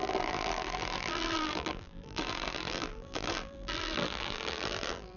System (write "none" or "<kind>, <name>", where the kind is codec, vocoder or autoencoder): vocoder, BigVGAN v2